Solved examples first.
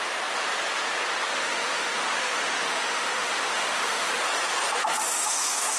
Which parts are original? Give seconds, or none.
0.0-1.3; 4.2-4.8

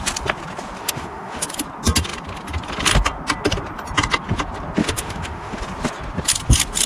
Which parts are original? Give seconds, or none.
0.0-0.8; 1.5-4.8; 5.6-6.9

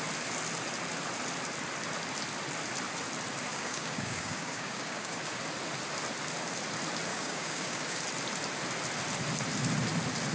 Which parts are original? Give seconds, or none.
0.0-3.5; 5.2-7.1; 8.0-10.3

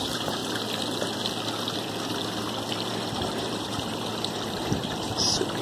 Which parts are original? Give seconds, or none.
0.4-2.9

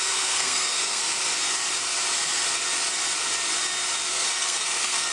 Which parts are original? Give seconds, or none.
1.0-4.1

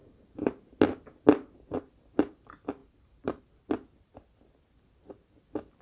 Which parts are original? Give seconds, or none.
0.7-2.8; 3.4-5.8

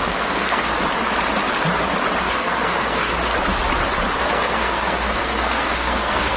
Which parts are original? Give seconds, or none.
0.7-2.2; 3.1-4.2